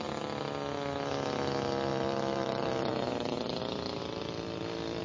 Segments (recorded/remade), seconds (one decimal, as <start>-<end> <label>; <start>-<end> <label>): 0.0-1.9 recorded; 1.9-5.0 remade